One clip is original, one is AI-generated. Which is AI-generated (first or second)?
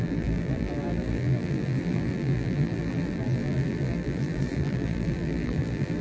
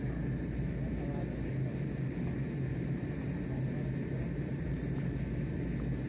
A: first